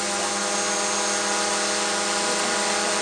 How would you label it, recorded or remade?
recorded